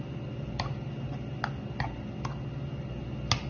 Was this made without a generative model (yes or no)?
yes